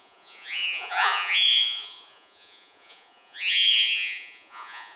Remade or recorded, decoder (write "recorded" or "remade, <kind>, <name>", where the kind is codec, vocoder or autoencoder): remade, vocoder, Vocos